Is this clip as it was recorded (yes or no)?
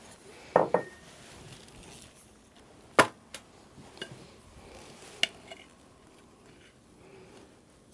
yes